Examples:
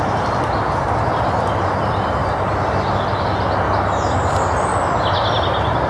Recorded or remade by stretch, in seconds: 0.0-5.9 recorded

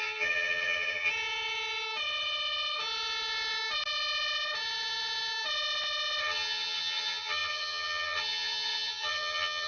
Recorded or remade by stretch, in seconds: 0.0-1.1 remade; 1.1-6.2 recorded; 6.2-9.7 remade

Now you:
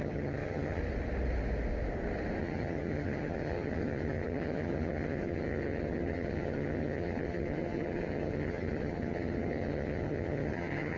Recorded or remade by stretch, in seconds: 0.0-0.8 remade; 0.8-2.4 recorded; 2.4-11.0 remade

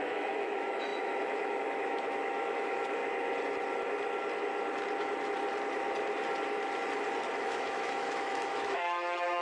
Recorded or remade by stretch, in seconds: 0.0-3.0 remade; 3.0-7.4 recorded; 7.4-9.4 remade

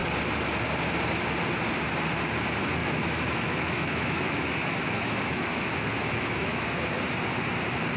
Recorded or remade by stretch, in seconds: 0.0-2.8 recorded; 2.8-6.6 remade; 6.6-8.0 recorded